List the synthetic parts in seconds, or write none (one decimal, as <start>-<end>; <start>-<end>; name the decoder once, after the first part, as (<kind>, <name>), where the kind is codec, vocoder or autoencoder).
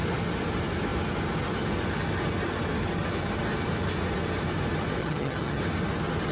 5.0-5.6 (vocoder, HiFi-GAN)